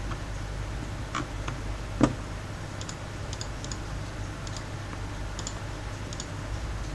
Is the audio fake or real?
real